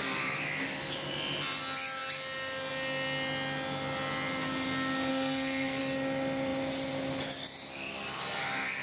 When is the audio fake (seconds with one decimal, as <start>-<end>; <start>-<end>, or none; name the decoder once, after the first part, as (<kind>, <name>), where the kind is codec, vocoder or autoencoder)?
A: 5.1-5.8 (codec, SNAC)